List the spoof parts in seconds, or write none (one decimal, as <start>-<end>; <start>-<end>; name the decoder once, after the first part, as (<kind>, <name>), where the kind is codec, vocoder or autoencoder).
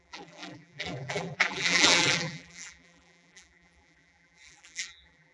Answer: 0.0-5.3 (vocoder, BigVGAN v2)